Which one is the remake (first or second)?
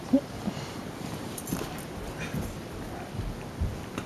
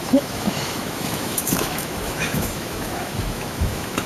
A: second